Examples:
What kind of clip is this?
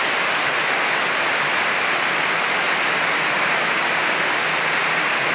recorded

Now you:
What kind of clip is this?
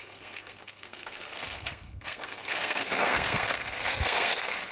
remade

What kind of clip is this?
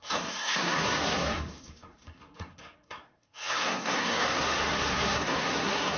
remade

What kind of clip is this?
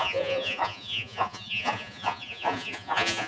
remade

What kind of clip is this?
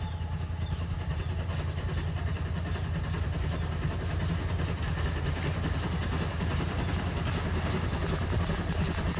recorded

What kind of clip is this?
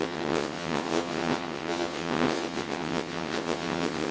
remade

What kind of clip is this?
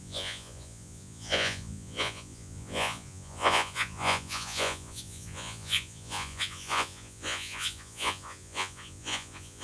remade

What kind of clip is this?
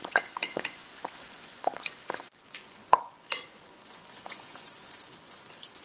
remade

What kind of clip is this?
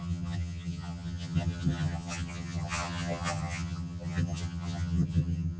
remade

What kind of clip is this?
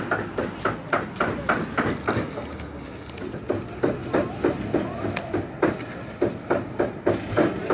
recorded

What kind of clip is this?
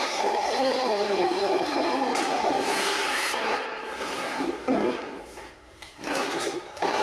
remade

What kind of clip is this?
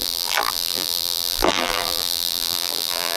remade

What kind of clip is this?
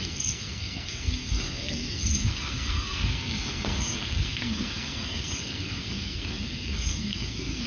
remade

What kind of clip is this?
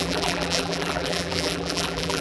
remade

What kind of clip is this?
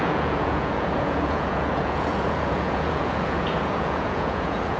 remade